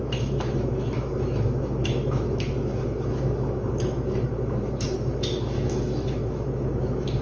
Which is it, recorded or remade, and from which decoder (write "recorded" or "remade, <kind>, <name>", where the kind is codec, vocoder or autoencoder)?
remade, autoencoder, DAC-VAE